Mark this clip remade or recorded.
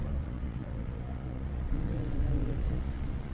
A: remade